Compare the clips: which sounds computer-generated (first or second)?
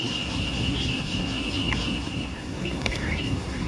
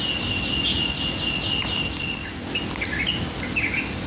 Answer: first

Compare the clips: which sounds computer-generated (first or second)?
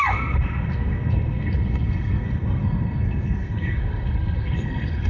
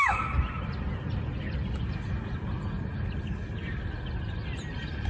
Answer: first